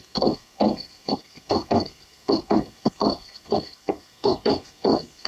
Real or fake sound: fake